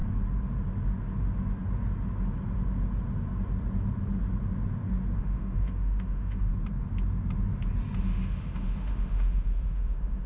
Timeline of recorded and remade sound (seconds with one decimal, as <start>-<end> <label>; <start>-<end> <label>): 0.0-5.2 recorded; 5.2-6.5 remade; 6.5-8.0 recorded; 8.0-10.3 remade